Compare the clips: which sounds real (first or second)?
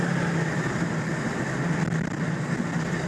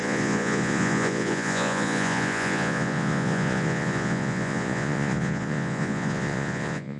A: first